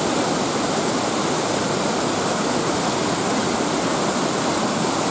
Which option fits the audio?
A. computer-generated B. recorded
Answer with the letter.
B